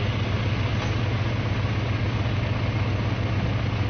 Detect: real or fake real